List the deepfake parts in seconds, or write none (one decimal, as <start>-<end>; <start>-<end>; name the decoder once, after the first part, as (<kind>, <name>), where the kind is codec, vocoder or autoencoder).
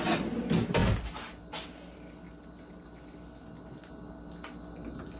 none